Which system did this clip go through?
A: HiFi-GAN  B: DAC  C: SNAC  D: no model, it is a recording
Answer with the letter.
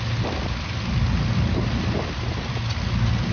D